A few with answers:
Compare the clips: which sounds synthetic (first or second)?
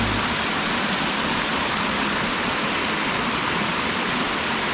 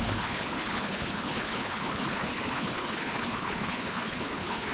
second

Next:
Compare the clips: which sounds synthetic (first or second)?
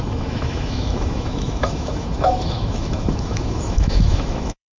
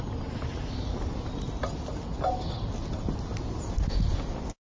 first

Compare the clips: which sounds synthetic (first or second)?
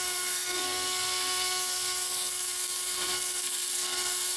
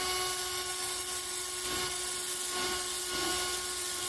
first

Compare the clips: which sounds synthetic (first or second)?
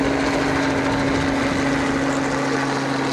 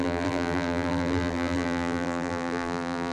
second